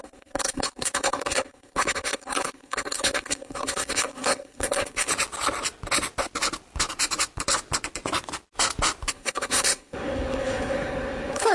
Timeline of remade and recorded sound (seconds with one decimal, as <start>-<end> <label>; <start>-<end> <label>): 0.0-5.1 remade; 5.1-9.1 recorded; 9.1-11.5 remade